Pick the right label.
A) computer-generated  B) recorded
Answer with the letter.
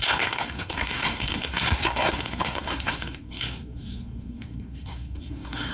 A